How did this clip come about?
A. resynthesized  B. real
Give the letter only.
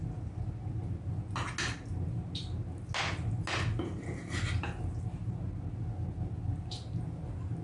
B